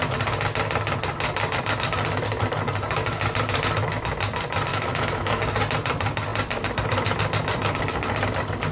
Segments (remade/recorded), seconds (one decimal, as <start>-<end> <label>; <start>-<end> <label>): 0.0-4.7 recorded; 4.7-5.4 remade; 5.4-8.7 recorded